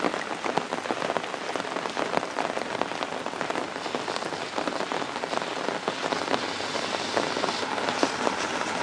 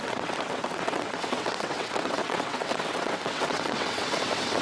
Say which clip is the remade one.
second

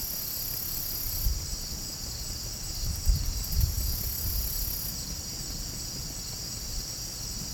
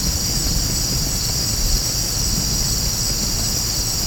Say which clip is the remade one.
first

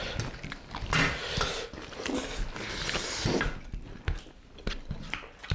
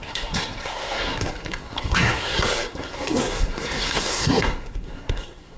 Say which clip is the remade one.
second